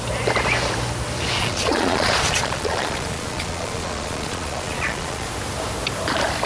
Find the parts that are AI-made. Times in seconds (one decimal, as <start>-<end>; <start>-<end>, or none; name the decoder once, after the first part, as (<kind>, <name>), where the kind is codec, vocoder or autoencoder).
1.4-5.3 (vocoder, Vocos)